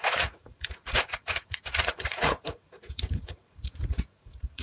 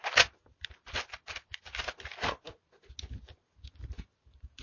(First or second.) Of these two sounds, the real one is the second